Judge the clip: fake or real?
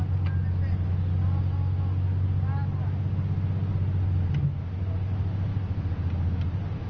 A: real